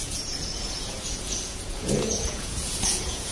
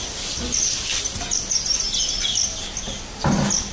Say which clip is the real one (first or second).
second